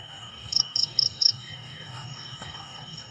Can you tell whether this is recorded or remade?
remade